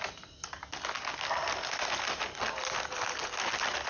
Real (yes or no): yes